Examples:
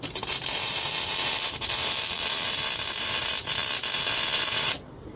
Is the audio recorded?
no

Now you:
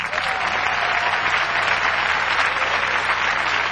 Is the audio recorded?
yes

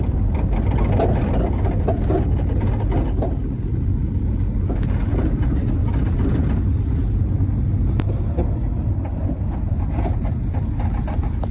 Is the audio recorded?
yes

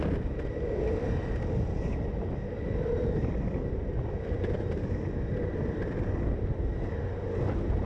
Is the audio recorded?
yes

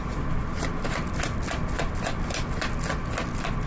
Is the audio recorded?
yes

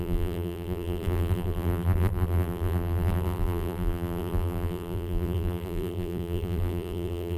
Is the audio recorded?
no